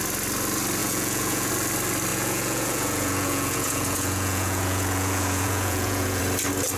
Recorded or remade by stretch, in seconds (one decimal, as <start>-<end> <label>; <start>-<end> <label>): 0.0-0.8 recorded; 0.8-1.5 remade; 1.5-2.1 recorded; 2.1-6.2 remade; 6.2-6.8 recorded

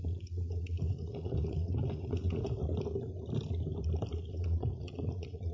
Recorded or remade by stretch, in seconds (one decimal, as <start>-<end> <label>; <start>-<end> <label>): 0.0-2.6 remade; 2.6-4.3 recorded; 4.3-5.5 remade

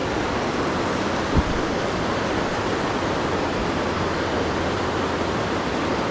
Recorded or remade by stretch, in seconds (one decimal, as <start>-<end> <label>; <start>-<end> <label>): 0.0-6.1 recorded

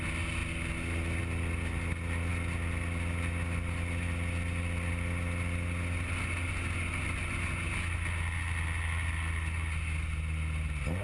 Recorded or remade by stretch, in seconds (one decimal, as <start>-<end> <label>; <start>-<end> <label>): 0.0-11.0 recorded

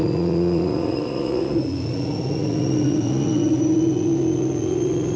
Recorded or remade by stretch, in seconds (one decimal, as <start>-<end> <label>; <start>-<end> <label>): 0.0-5.2 remade